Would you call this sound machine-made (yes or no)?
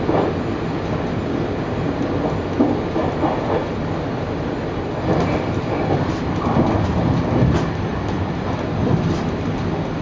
no